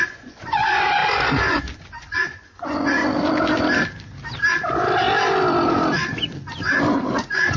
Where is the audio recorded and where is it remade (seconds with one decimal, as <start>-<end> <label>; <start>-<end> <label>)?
0.0-3.0 remade; 3.0-7.1 recorded; 7.1-7.6 remade

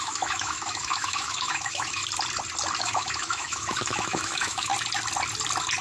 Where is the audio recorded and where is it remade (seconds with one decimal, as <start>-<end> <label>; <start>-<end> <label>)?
0.0-2.0 remade; 2.0-2.8 recorded; 2.8-4.7 remade; 4.7-5.8 recorded